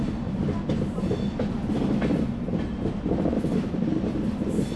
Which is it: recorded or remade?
recorded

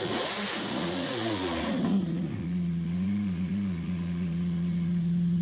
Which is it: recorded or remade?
remade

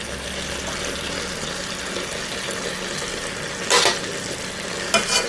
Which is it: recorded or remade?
recorded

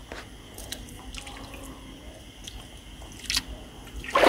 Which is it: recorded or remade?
recorded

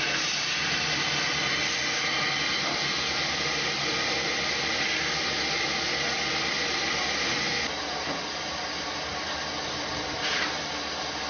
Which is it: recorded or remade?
recorded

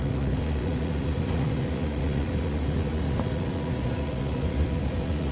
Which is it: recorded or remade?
remade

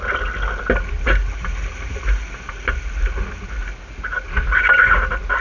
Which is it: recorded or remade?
recorded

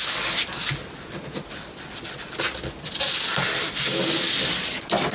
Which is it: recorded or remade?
recorded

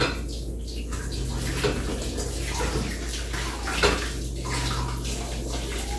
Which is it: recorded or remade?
recorded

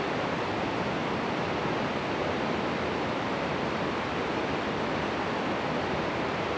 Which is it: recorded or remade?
recorded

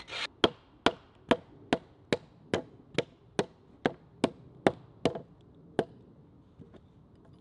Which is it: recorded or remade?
recorded